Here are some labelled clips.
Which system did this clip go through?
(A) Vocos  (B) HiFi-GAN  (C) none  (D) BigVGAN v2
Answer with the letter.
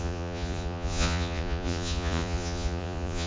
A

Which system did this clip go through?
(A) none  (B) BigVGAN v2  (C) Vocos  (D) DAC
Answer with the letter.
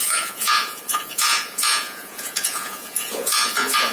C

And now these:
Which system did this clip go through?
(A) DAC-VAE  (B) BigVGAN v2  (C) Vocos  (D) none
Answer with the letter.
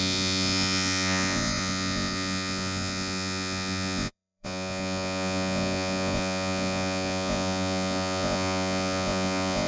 C